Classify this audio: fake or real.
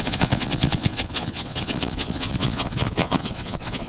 fake